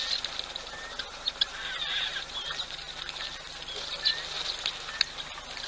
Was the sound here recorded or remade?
recorded